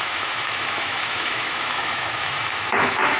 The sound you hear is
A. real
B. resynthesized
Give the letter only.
B